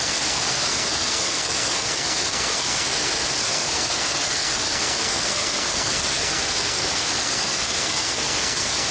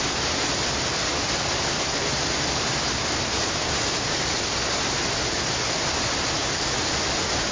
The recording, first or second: second